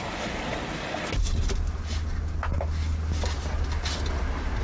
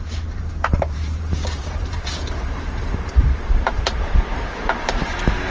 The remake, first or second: second